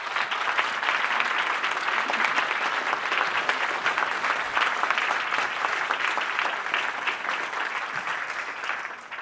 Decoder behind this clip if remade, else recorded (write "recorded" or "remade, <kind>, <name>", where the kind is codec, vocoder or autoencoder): recorded